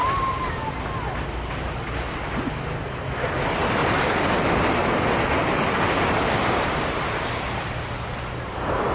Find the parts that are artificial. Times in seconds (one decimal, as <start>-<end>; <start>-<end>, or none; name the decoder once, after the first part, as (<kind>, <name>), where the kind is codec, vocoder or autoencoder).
0.0-0.8 (vocoder, BigVGAN v2)